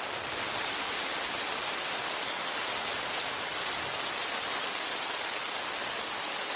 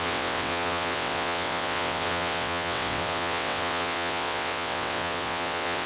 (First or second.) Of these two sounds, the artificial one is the second